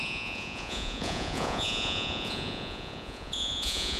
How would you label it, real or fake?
fake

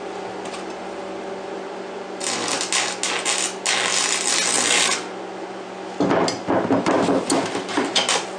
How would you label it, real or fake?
real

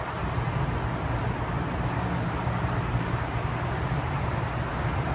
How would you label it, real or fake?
real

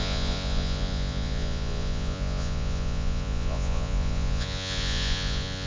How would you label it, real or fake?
fake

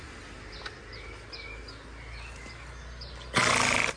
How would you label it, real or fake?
real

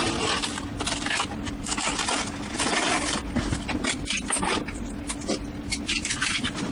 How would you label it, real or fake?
real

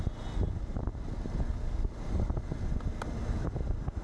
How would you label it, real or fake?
real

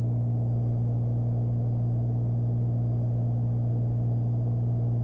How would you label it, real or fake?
real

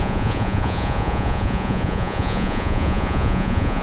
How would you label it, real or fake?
fake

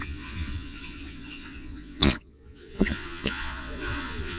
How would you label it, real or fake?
fake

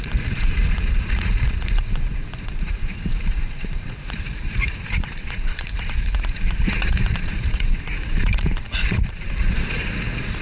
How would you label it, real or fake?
fake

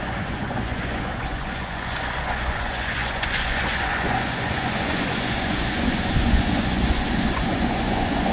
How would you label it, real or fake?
fake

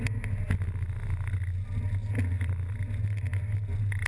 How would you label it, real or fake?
real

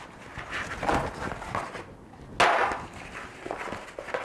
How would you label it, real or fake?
real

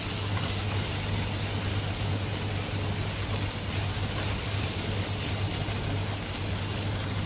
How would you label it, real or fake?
real